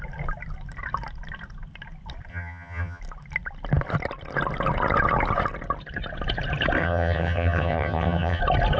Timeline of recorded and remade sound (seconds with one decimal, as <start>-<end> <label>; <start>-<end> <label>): 0.0-2.3 recorded; 2.3-3.0 remade; 3.0-6.8 recorded; 6.8-8.4 remade; 8.4-8.8 recorded